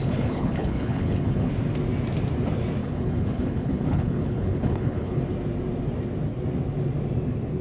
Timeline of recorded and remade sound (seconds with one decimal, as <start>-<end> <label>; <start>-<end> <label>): 0.0-1.5 remade; 1.5-2.8 recorded; 2.8-5.2 remade; 5.2-7.6 recorded